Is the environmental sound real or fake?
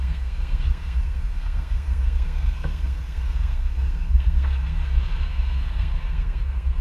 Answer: fake